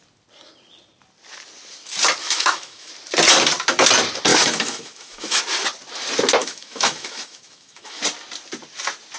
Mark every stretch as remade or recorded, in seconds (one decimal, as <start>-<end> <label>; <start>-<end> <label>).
0.0-2.2 recorded; 2.2-2.9 remade; 2.9-4.3 recorded; 4.3-5.4 remade; 5.4-6.4 recorded; 6.4-8.0 remade; 8.0-9.2 recorded